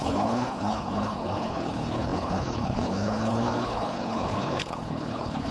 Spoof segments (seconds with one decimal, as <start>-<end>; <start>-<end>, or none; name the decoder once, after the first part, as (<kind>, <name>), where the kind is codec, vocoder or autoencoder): 0.0-5.5 (codec, HILCodec)